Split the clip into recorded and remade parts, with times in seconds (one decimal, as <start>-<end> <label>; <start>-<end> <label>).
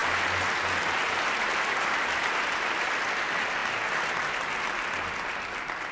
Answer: 0.0-5.9 recorded